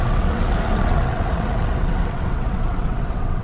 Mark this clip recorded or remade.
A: remade